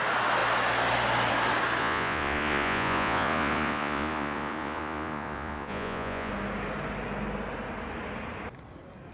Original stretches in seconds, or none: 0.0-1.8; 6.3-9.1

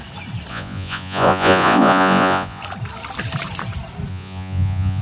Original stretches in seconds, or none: 0.0-0.5; 2.6-4.1

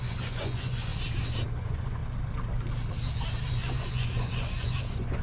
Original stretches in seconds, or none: 0.9-1.5; 2.0-3.5

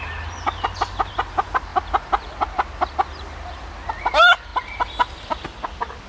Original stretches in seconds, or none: 0.0-6.1

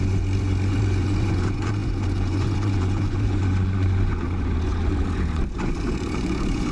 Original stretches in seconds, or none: none

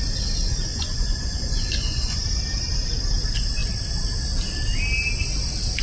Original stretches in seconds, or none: 0.0-0.7; 2.2-5.8

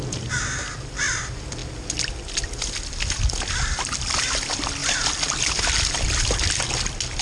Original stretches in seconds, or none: 0.0-7.2

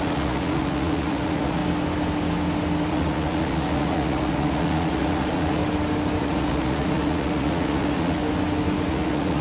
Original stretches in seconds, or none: 1.6-2.9; 5.6-6.2; 8.2-8.9